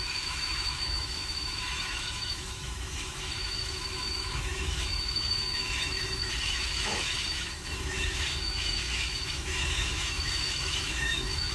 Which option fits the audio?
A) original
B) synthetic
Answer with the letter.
B